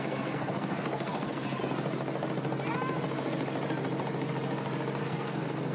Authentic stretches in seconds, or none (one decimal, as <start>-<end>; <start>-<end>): 1.6-5.0